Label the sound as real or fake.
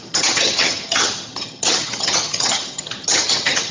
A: fake